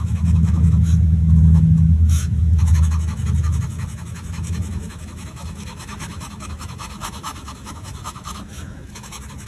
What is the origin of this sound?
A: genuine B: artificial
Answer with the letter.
B